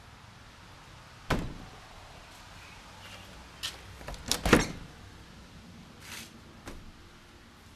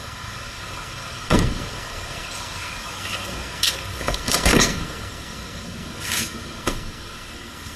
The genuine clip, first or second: first